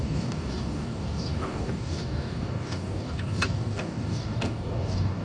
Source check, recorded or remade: remade